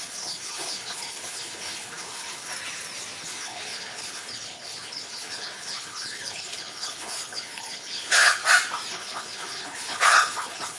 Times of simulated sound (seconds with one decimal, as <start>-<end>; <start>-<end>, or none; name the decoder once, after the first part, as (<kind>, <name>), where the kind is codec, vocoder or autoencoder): 0.0-2.5 (codec, HILCodec); 3.2-8.4; 8.9-10.8